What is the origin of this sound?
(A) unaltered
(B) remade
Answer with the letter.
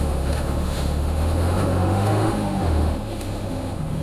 B